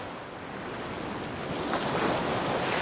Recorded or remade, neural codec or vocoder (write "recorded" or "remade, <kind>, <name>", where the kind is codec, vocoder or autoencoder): recorded